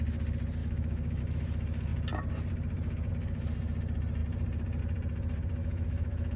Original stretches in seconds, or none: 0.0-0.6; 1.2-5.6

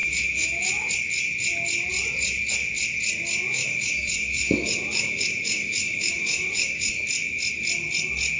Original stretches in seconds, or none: 0.9-3.5; 6.9-8.4